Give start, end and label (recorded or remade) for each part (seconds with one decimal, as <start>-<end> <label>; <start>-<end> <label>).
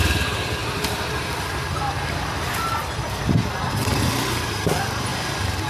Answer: 0.0-0.6 recorded; 0.6-4.0 remade; 4.0-5.1 recorded; 5.1-5.7 remade